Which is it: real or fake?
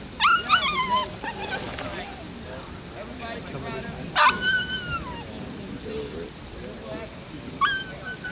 real